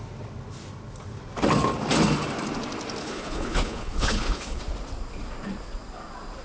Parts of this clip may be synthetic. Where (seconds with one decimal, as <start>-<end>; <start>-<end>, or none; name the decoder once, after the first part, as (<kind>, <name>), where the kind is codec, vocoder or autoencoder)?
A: 3.0-4.6 (codec, HILCodec)